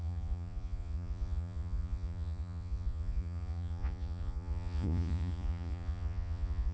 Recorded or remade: remade